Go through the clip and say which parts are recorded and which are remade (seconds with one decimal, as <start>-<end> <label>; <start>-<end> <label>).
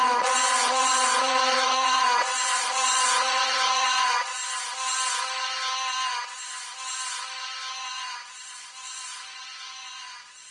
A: 0.0-4.4 remade; 4.4-7.7 recorded; 7.7-10.5 remade